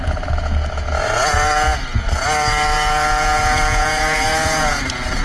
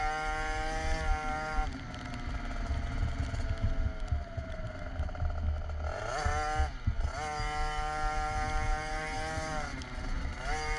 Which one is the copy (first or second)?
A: first